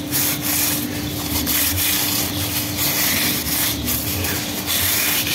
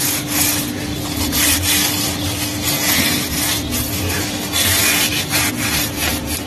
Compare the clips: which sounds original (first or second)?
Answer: second